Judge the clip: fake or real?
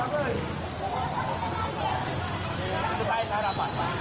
real